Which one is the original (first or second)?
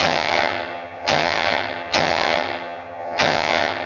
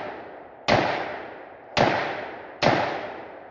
second